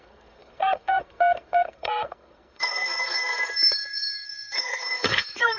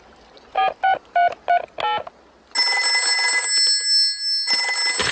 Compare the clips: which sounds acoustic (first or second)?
second